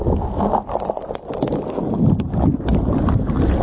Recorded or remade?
recorded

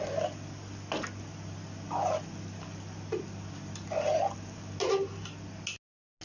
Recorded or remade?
recorded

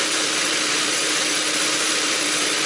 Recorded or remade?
remade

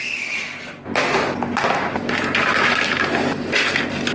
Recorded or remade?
recorded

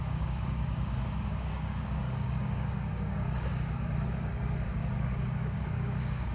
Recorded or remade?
remade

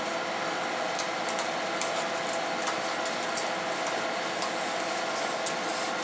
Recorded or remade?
recorded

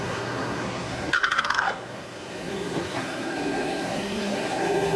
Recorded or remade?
remade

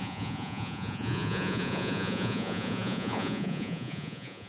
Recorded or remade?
remade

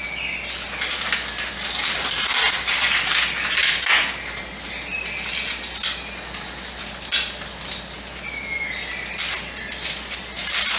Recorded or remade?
recorded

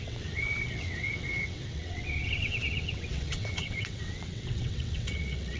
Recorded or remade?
remade